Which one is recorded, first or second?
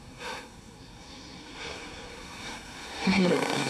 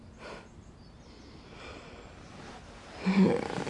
second